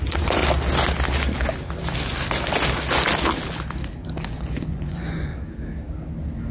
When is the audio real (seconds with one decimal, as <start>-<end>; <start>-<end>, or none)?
0.4-4.3; 5.3-6.5